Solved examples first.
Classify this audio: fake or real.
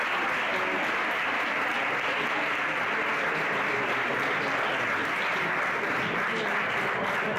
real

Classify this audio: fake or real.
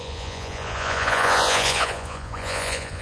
fake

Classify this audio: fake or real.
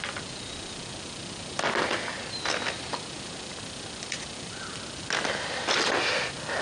real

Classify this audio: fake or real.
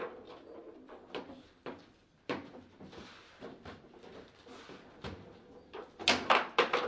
real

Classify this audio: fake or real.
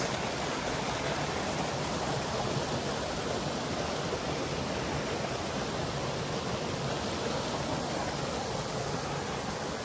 real